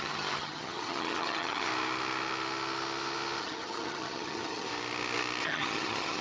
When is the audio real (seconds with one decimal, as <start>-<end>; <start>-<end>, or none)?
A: 1.7-3.4; 4.7-5.4